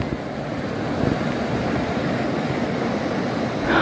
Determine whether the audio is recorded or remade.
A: recorded